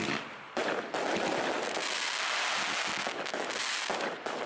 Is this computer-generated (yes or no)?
no